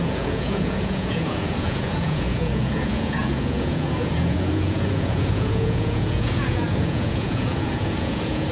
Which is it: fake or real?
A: fake